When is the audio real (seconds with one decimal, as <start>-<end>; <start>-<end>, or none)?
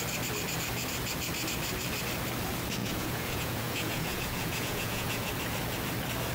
0.0-2.8; 5.3-6.3